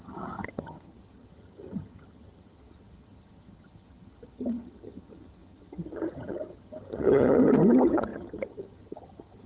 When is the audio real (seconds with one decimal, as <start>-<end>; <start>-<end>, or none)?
none